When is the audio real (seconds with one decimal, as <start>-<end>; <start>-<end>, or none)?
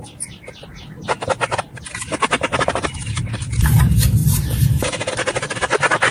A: 0.0-4.2; 5.1-6.1